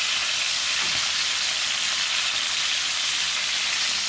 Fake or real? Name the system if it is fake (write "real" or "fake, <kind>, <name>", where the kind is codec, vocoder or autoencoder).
real